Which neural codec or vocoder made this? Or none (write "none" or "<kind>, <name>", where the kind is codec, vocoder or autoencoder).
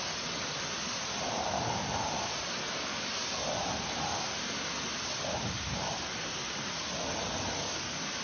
none